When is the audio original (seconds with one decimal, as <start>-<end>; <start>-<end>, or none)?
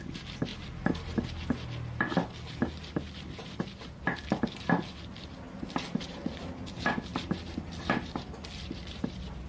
0.0-9.5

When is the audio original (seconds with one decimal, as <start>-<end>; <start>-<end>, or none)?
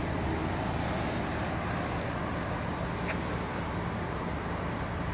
0.0-5.1